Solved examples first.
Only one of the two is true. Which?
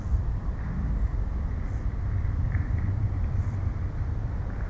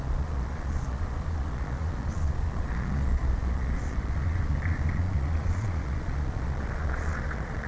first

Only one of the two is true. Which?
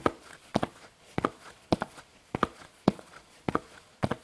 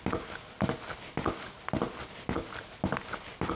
second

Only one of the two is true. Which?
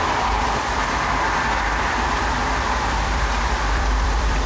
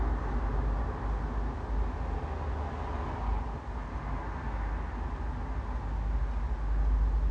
second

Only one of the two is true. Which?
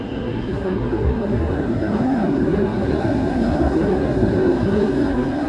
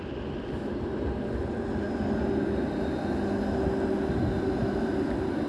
second